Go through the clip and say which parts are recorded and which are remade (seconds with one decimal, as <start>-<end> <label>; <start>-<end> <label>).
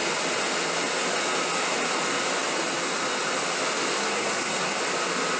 0.0-4.0 recorded; 4.0-4.8 remade; 4.8-5.4 recorded